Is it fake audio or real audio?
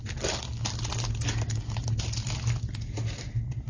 real